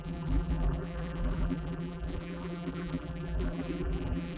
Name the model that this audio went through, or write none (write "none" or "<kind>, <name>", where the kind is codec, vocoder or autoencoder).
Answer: vocoder, BigVGAN v2